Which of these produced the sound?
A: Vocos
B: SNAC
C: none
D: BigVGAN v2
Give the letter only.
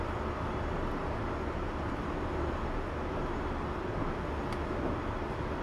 C